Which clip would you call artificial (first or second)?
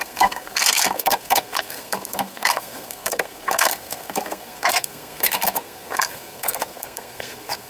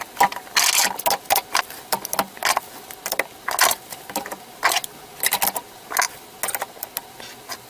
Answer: first